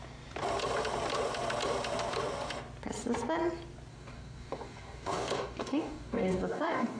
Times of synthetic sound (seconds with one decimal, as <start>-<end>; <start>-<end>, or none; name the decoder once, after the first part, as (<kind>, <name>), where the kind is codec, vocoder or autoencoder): 3.9-7.0 (codec, DAC)